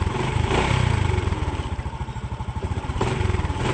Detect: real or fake fake